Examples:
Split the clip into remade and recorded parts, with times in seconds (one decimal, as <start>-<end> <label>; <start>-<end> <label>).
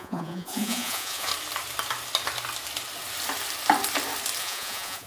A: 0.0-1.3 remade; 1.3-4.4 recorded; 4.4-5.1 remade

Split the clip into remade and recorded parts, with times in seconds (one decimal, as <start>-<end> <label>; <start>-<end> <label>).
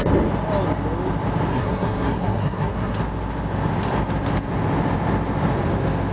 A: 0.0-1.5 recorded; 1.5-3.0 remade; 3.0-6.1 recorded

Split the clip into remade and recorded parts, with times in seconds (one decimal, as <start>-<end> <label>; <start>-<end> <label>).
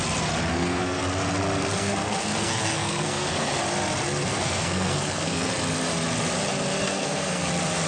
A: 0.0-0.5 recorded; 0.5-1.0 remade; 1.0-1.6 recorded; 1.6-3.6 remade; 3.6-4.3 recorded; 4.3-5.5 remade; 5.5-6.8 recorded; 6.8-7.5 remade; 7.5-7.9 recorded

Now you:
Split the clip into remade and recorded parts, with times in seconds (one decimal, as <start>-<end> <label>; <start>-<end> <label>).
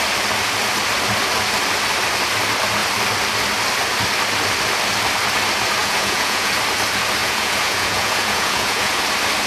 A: 0.0-5.8 recorded; 5.8-6.5 remade; 6.5-7.2 recorded; 7.2-9.0 remade; 9.0-9.5 recorded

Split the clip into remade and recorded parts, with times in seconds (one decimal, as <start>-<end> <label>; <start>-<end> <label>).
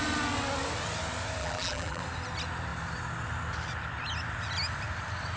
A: 0.0-1.4 recorded; 1.4-2.0 remade; 2.0-5.4 recorded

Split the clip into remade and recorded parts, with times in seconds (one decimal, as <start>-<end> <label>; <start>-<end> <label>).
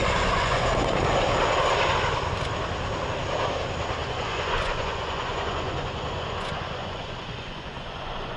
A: 0.0-0.9 remade; 0.9-4.0 recorded; 4.0-8.4 remade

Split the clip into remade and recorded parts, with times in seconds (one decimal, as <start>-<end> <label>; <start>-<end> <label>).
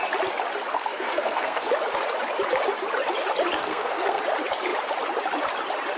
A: 0.0-0.7 recorded; 0.7-1.7 remade; 1.7-3.6 recorded; 3.6-4.2 remade; 4.2-6.0 recorded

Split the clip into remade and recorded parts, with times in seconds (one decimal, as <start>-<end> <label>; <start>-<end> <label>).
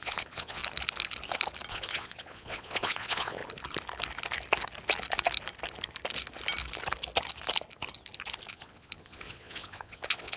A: 0.0-0.6 remade; 0.6-1.7 recorded; 1.7-3.4 remade; 3.4-8.5 recorded; 8.5-10.4 remade